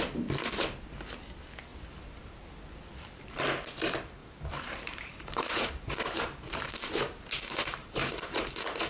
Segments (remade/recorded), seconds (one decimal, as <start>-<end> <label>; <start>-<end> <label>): 0.0-1.7 recorded; 1.7-3.4 remade; 3.4-4.2 recorded; 4.2-6.9 remade; 6.9-7.8 recorded; 7.8-8.5 remade; 8.5-8.9 recorded